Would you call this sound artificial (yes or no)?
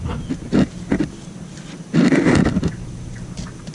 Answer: no